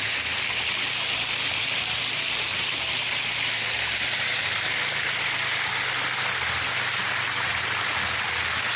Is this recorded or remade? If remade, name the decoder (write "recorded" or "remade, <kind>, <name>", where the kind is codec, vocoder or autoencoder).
recorded